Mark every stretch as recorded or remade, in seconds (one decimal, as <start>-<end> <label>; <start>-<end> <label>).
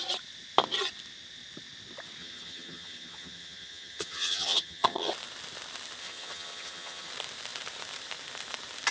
0.0-2.2 recorded; 2.2-5.1 remade; 5.1-6.0 recorded; 6.0-7.1 remade; 7.1-8.9 recorded